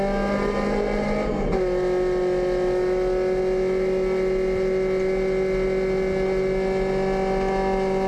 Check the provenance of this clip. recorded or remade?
recorded